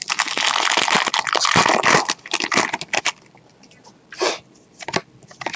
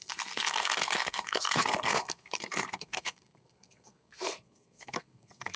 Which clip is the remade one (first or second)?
second